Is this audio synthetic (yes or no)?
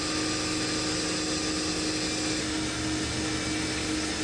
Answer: no